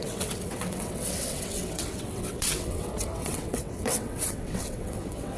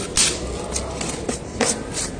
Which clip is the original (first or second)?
second